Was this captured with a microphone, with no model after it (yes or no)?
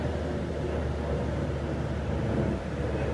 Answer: yes